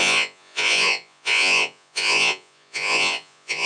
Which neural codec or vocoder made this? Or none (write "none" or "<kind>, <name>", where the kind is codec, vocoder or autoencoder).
vocoder, Vocos